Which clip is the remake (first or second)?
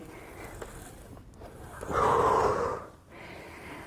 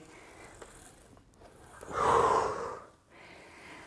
first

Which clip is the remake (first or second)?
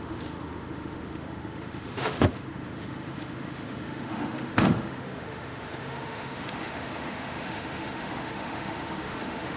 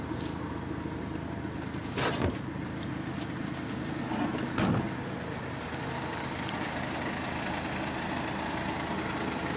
first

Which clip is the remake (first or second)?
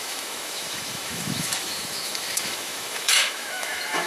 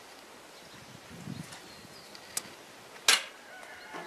first